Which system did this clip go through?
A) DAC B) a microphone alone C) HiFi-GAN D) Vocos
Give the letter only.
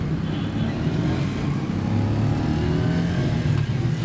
B